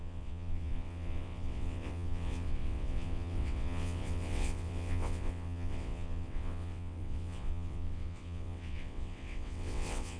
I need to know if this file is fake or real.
fake